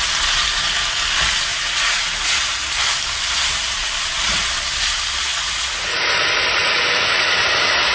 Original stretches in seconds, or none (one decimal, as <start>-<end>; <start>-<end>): 0.0-1.5; 2.6-5.3; 6.0-6.6; 7.4-7.9